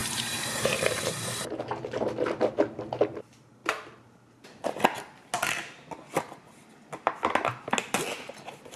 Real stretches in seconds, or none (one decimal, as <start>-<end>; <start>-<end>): 2.4-8.8